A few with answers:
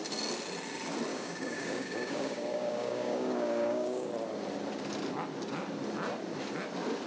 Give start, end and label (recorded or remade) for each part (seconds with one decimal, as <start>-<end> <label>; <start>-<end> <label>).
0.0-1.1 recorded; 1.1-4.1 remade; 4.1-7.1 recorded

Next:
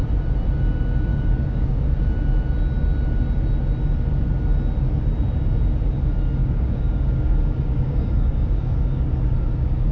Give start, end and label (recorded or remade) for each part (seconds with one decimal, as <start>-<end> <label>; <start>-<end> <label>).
0.0-1.1 recorded; 1.1-2.0 remade; 2.0-6.4 recorded; 6.4-9.9 remade

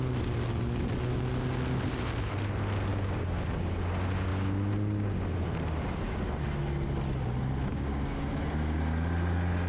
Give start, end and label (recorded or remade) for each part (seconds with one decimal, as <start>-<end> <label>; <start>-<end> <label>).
0.0-2.9 recorded; 2.9-3.5 remade; 3.5-7.7 recorded; 7.7-8.2 remade; 8.2-9.7 recorded

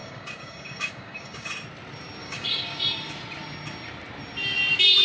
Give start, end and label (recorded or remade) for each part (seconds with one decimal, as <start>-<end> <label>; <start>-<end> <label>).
0.0-1.5 remade; 1.5-2.2 recorded; 2.2-2.8 remade; 2.8-5.0 recorded

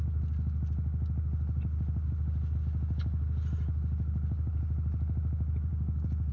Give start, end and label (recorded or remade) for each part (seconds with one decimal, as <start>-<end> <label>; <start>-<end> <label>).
0.0-5.7 recorded; 5.7-6.3 remade

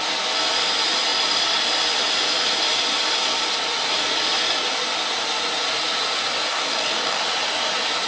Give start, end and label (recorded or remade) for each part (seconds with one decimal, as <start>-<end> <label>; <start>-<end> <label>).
0.0-6.5 recorded; 6.5-7.2 remade; 7.2-8.1 recorded

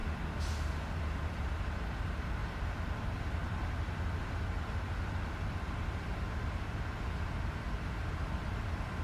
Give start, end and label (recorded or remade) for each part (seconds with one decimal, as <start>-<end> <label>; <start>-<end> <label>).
0.0-9.0 recorded

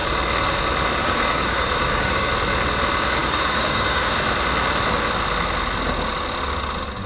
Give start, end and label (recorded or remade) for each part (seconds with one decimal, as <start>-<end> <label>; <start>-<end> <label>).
0.0-1.0 recorded; 1.0-2.3 remade; 2.3-3.2 recorded; 3.2-4.1 remade; 4.1-7.1 recorded